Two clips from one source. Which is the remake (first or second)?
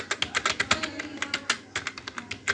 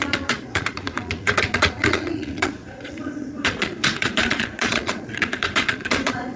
second